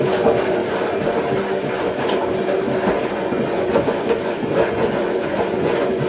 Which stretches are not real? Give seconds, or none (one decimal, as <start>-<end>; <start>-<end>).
0.0-0.6; 1.6-2.4; 3.1-6.1